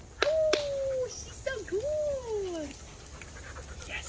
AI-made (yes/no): no